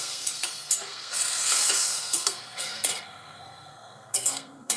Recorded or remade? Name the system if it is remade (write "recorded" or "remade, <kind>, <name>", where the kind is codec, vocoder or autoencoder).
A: remade, codec, SNAC